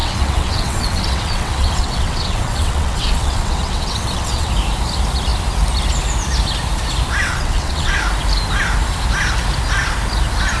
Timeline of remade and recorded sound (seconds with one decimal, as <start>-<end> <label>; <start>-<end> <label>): 0.0-4.5 remade; 4.5-7.2 recorded; 7.2-8.0 remade; 8.0-10.6 recorded